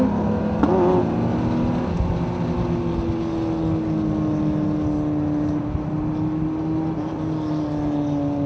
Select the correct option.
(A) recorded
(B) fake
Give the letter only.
A